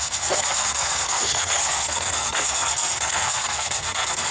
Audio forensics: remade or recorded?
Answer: remade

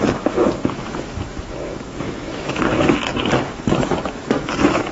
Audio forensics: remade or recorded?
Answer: remade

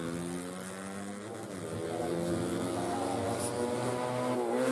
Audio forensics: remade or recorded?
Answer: recorded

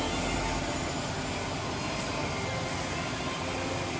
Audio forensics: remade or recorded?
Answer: recorded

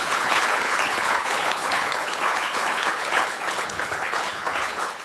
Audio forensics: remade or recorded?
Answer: remade